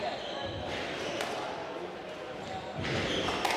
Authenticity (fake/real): real